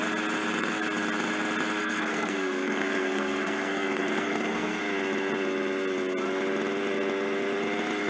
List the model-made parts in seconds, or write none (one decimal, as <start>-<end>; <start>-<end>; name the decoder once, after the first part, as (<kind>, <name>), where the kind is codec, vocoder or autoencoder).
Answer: 1.8-4.8 (codec, SNAC)